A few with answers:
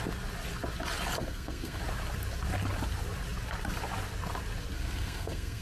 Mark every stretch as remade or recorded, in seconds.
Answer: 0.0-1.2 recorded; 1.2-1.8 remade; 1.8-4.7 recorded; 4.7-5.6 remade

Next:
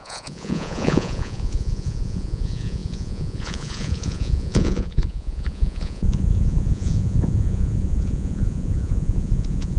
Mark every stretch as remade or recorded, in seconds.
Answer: 0.0-9.8 remade

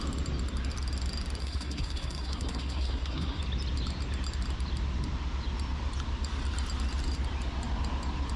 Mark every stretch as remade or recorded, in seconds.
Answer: 0.0-1.4 recorded; 1.4-3.4 remade; 3.4-8.4 recorded

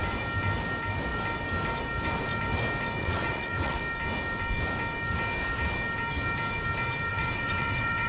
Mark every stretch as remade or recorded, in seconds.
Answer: 0.0-3.0 recorded; 3.0-3.8 remade; 3.8-7.1 recorded; 7.1-8.1 remade

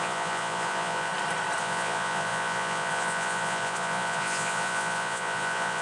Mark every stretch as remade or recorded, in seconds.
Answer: 0.0-1.1 remade; 1.1-1.6 recorded; 1.6-5.8 remade

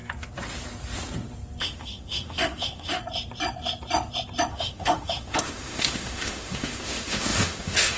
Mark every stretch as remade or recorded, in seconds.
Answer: 0.0-1.6 recorded; 1.6-3.0 remade; 3.0-4.5 recorded; 4.5-8.0 remade

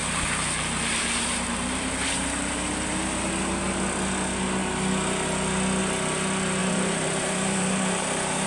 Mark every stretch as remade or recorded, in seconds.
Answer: 0.0-3.3 remade; 3.3-6.6 recorded; 6.6-8.5 remade

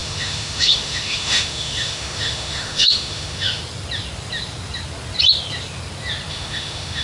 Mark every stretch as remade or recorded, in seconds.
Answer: 0.0-3.6 remade; 3.6-6.3 recorded; 6.3-7.0 remade